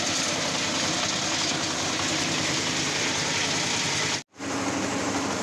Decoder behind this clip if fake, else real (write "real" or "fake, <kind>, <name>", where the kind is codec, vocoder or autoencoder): real